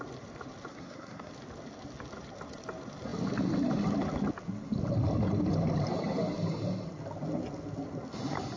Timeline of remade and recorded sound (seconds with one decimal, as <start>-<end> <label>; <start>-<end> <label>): 0.0-0.7 recorded; 0.7-1.3 remade; 1.3-8.6 recorded